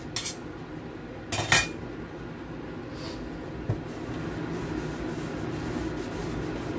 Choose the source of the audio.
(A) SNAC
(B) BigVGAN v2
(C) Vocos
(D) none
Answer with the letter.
D